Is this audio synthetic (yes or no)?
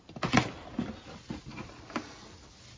no